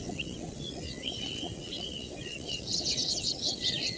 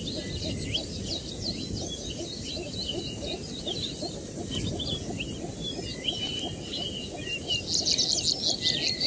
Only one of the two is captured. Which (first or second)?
second